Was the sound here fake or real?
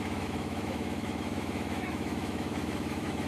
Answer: fake